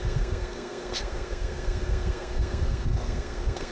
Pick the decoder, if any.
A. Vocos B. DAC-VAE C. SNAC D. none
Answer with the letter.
C